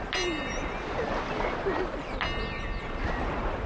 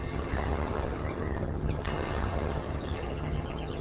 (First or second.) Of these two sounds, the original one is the first